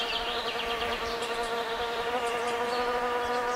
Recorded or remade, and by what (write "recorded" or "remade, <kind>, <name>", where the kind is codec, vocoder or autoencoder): remade, vocoder, BigVGAN v2